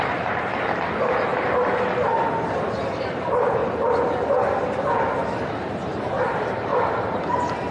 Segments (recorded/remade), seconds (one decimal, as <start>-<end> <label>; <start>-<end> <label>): 0.0-1.3 remade; 1.3-2.8 recorded; 2.8-3.6 remade; 3.6-5.6 recorded; 5.6-7.7 remade